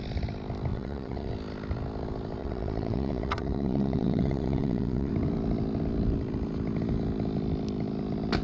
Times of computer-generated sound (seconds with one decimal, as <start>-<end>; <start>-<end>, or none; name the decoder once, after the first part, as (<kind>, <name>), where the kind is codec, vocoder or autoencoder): 0.7-1.3 (vocoder, WaveNeXt); 2.4-5.1